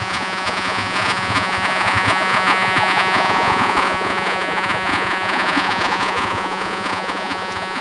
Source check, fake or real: fake